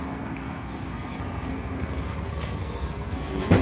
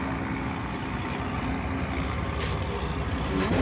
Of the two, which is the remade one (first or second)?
first